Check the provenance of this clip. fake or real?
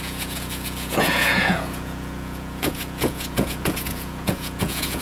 fake